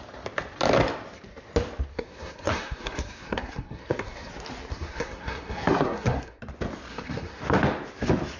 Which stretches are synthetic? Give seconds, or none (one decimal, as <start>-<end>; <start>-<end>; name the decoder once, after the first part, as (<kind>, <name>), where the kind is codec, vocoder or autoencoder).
1.9-4.3 (codec, SNAC); 4.7-6.4; 6.9-7.4